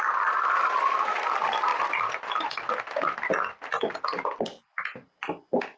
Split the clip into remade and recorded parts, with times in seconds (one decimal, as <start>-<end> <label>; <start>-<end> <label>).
0.0-5.8 recorded